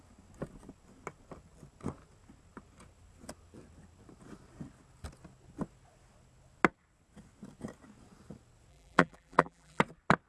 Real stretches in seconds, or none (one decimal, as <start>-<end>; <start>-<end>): 0.0-8.7; 9.8-10.3